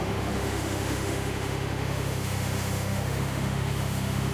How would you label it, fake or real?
fake